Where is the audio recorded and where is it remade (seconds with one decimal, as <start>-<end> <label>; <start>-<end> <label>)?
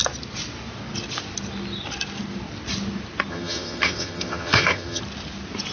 0.0-3.3 recorded; 3.3-5.0 remade; 5.0-5.7 recorded